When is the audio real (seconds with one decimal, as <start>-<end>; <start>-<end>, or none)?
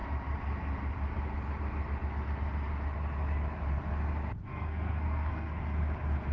0.0-4.5; 5.6-6.3